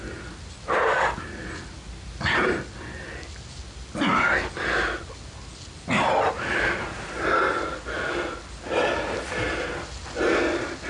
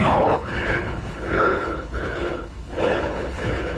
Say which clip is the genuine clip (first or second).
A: first